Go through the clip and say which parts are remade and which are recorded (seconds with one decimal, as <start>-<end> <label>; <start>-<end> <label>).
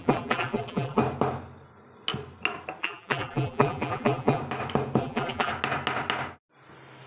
0.0-1.0 remade; 1.0-2.8 recorded; 2.8-4.4 remade; 4.4-5.0 recorded; 5.0-5.5 remade; 5.5-7.1 recorded